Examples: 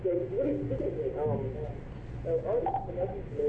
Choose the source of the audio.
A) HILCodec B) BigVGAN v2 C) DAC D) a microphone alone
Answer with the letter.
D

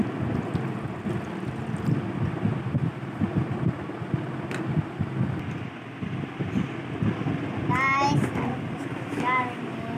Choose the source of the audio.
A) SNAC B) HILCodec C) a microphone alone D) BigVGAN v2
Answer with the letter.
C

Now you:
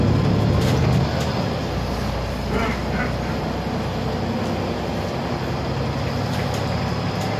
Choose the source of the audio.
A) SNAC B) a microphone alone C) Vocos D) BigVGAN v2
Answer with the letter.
B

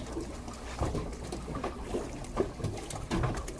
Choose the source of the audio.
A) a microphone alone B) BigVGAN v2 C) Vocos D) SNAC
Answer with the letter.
A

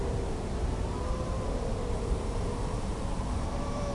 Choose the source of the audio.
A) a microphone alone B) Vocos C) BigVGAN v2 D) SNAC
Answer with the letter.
C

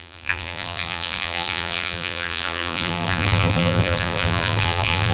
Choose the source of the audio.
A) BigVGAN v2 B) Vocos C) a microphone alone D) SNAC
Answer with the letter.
A